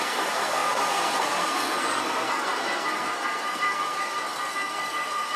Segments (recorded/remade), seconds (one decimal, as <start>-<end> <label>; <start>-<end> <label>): 0.0-5.4 remade